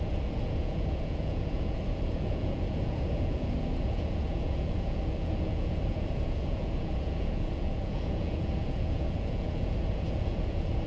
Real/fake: fake